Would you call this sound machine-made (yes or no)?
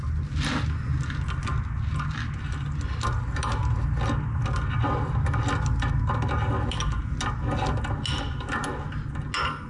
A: no